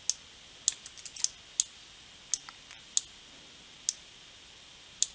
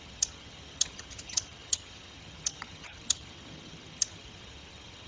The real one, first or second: first